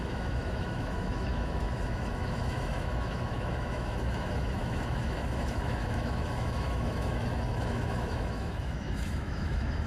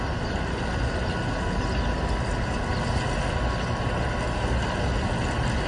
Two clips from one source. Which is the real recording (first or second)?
second